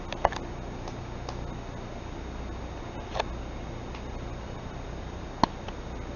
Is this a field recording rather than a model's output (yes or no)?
yes